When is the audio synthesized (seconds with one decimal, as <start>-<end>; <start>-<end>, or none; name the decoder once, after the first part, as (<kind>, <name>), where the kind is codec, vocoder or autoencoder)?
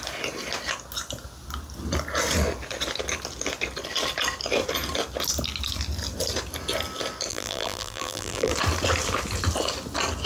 7.3-8.5 (vocoder, BigVGAN v2)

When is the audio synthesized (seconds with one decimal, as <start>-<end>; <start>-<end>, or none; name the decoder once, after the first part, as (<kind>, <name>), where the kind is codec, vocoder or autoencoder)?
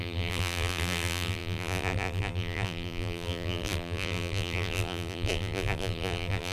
0.0-6.5 (vocoder, BigVGAN v2)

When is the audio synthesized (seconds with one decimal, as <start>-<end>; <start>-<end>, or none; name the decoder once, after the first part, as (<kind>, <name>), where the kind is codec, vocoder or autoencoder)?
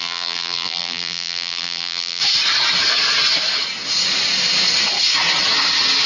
0.0-2.2 (vocoder, BigVGAN v2)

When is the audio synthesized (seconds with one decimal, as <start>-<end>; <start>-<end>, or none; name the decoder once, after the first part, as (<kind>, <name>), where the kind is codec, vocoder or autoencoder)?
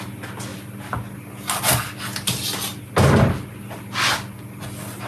none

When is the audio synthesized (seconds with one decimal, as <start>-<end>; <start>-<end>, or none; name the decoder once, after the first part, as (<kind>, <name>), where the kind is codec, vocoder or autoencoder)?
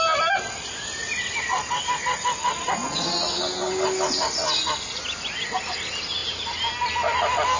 6.2-6.9 (vocoder, BigVGAN v2)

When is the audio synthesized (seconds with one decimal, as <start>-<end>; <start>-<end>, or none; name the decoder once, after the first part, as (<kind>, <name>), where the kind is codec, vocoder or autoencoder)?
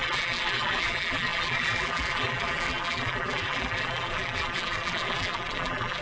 0.0-6.0 (vocoder, BigVGAN v2)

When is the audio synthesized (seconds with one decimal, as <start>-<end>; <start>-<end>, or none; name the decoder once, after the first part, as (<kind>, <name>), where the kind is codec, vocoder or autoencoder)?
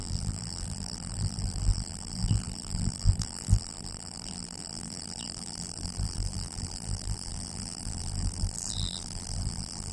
0.0-9.9 (vocoder, BigVGAN v2)